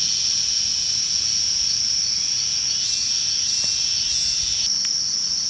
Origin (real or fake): real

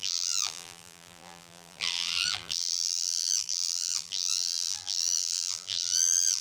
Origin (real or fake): fake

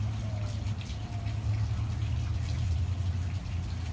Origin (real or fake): real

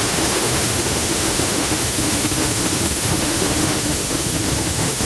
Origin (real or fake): fake